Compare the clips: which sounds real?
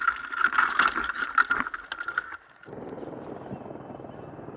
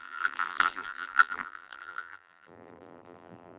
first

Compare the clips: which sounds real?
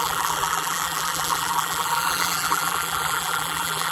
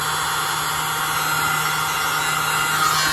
second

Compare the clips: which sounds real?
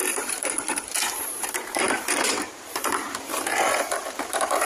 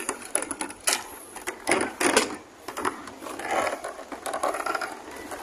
second